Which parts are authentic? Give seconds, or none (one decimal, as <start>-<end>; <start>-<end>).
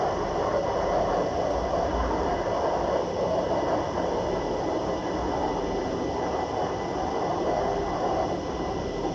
0.0-9.1